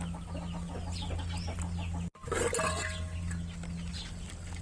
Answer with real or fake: real